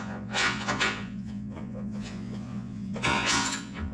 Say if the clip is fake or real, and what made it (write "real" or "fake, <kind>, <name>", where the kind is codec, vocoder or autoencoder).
fake, vocoder, Vocos